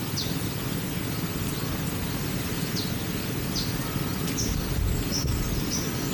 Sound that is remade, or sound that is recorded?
recorded